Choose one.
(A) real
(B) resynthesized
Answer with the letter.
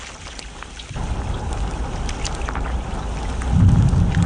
A